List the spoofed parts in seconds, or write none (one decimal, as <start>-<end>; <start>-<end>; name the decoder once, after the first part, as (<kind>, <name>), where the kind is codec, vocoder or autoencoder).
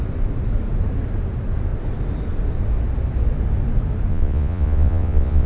4.1-5.5 (vocoder, Vocos)